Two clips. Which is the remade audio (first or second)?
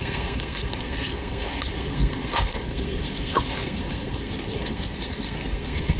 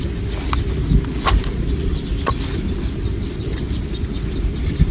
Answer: first